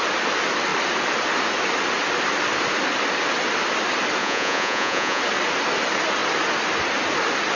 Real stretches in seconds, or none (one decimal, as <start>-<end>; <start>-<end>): 0.0-4.2; 5.2-7.6